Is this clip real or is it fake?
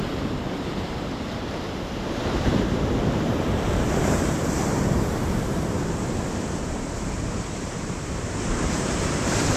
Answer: fake